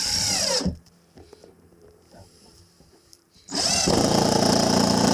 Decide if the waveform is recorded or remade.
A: remade